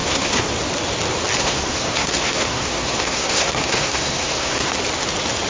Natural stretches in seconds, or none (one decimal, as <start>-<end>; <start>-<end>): 0.5-1.4; 4.7-5.5